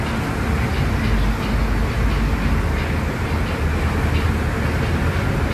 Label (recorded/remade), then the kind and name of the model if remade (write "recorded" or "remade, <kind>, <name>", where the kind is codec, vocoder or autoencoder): recorded